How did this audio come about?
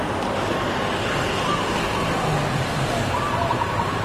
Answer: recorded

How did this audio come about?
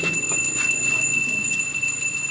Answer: remade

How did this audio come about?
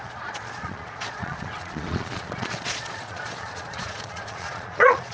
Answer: remade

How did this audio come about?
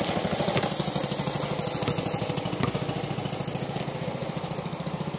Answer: recorded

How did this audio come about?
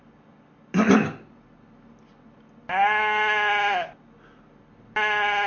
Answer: recorded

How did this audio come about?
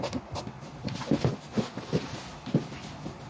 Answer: recorded